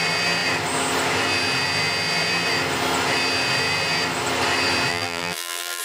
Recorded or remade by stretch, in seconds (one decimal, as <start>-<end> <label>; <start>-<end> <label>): 0.0-4.9 recorded; 4.9-5.8 remade